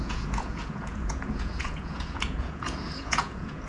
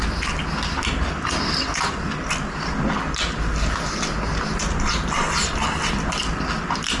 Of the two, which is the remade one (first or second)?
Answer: first